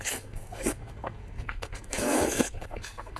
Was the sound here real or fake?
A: fake